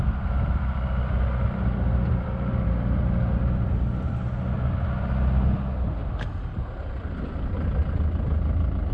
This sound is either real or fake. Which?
real